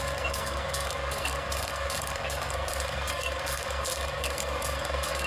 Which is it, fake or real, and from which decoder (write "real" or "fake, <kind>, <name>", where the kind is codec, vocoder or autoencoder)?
fake, codec, SNAC